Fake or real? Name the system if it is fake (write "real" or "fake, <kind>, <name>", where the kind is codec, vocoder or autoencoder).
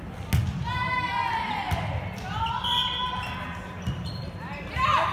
real